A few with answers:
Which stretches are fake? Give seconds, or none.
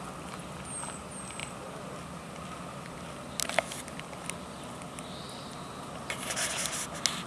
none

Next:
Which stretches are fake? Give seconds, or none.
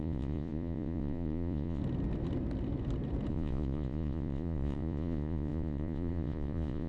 0.0-1.8 (vocoder, Vocos); 3.3-6.9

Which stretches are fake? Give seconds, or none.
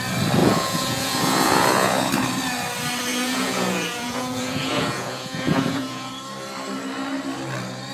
0.4-2.1 (vocoder, Vocos); 3.1-6.1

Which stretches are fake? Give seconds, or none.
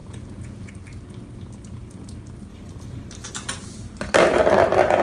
0.0-0.7 (vocoder, Vocos)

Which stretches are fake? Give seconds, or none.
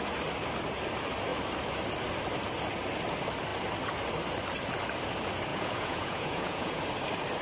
5.5-6.8 (vocoder, Vocos)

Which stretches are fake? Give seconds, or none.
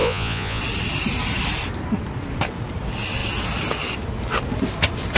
0.0-0.6 (vocoder, Vocos)